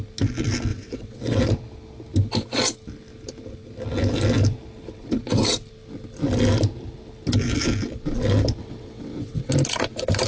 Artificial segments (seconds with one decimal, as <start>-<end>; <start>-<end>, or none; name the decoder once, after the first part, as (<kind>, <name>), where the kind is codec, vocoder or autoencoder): 0.7-1.4 (vocoder, WaveNeXt); 8.6-9.5